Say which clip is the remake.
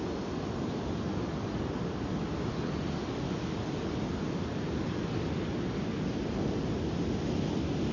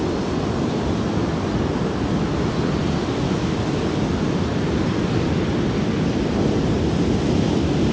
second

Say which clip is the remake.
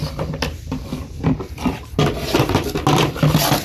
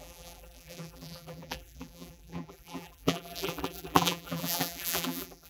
second